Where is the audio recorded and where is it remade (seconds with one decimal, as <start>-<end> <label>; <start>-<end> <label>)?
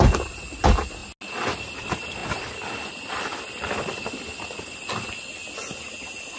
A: 0.0-6.4 recorded